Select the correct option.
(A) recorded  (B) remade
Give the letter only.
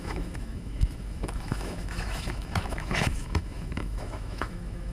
B